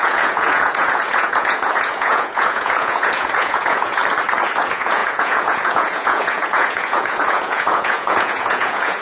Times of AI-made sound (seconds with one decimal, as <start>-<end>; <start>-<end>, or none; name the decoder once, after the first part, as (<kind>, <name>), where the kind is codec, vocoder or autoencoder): 0.0-4.0 (vocoder, Vocos); 4.6-9.0